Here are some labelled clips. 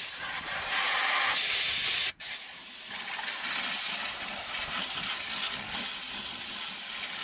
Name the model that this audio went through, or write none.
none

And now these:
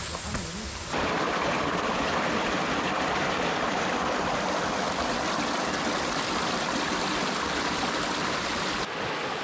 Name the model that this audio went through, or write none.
none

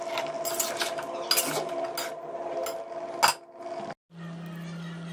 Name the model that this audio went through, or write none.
none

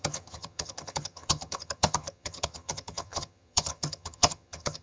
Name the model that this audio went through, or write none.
vocoder, HiFi-GAN